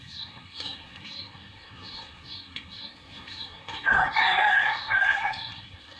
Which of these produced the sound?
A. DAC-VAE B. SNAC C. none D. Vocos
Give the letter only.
B